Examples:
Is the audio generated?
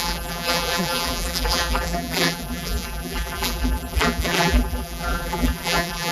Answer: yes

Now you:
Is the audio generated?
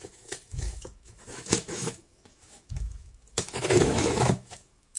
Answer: yes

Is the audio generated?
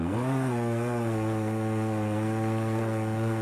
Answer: yes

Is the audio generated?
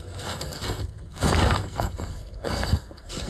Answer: yes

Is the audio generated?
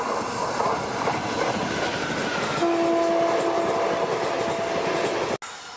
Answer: no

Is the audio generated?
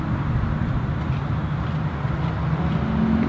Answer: no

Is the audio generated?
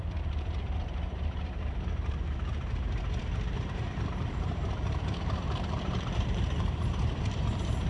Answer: yes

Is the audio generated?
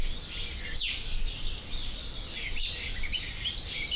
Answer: no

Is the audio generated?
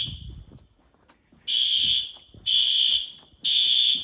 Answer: no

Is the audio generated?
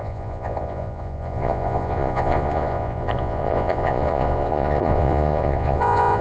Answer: yes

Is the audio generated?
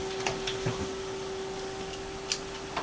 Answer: no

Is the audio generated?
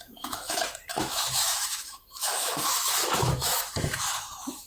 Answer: yes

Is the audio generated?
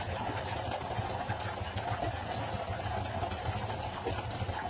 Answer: no